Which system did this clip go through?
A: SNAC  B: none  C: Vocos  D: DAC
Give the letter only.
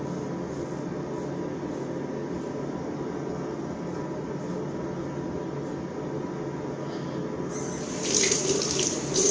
B